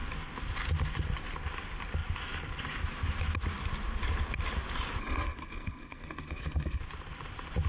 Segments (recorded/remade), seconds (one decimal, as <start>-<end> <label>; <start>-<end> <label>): 0.0-5.0 recorded; 5.0-6.8 remade; 6.8-7.7 recorded